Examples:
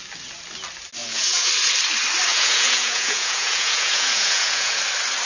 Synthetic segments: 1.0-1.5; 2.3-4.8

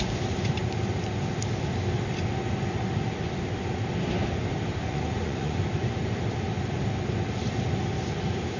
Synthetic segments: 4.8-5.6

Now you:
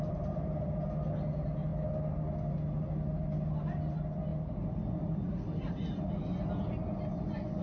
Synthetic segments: none

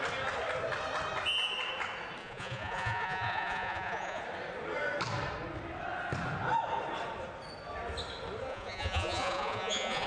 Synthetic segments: 2.2-4.2; 8.5-10.1

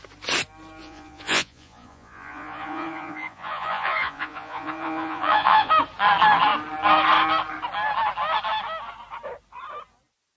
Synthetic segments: 0.8-5.7